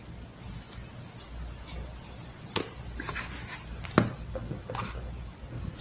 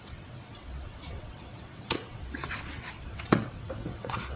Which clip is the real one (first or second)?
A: first